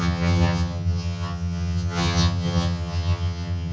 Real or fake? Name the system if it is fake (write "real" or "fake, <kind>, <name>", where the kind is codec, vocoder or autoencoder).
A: fake, vocoder, HiFi-GAN